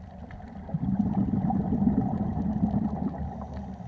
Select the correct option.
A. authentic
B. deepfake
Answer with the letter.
A